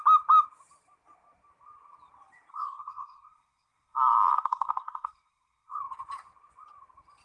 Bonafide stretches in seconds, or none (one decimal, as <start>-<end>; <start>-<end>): 0.0-2.5; 5.8-7.2